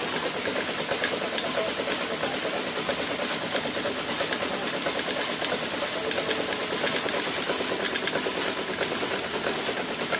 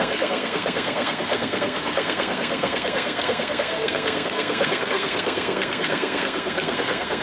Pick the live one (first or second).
first